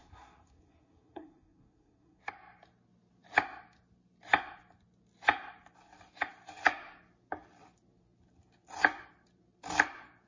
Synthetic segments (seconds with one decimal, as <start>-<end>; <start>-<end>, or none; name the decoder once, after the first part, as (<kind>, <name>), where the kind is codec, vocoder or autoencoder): 0.0-2.2 (codec, SNAC)